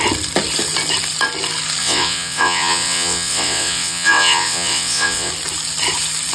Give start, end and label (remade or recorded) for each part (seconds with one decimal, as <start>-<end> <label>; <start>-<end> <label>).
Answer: 0.0-1.8 recorded; 1.8-5.3 remade; 5.3-6.3 recorded